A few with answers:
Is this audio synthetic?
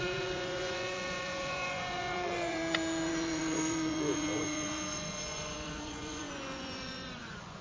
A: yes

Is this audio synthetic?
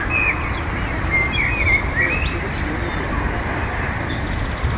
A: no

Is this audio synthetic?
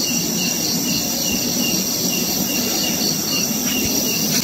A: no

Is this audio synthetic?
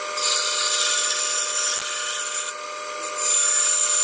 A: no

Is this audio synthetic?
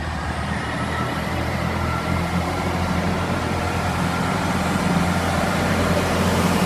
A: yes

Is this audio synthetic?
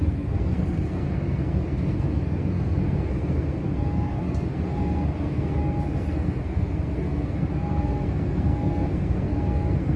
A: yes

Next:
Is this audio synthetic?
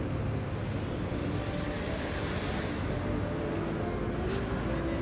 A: no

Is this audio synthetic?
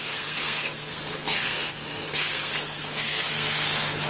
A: yes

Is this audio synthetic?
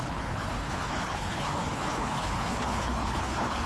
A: yes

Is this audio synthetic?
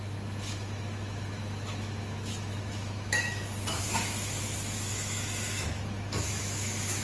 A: yes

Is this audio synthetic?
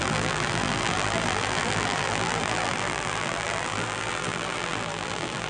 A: yes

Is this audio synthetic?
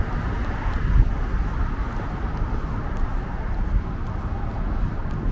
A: no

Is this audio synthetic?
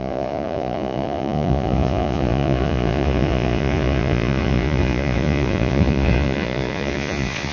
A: yes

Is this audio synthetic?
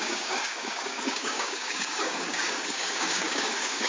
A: yes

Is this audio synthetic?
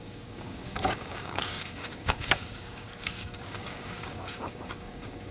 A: yes